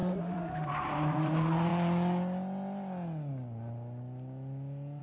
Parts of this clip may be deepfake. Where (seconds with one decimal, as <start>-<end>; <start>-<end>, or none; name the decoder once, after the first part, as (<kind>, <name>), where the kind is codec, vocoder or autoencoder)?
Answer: 0.0-1.7 (vocoder, BigVGAN v2)